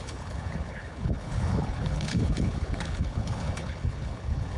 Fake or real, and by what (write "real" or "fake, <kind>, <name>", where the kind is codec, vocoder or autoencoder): fake, codec, HILCodec